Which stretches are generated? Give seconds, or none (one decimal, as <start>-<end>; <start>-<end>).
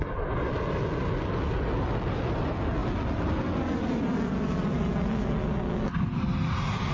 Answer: none